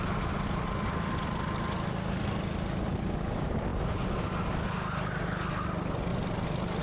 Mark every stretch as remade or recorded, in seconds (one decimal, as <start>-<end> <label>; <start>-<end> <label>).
0.0-6.1 recorded; 6.1-6.8 remade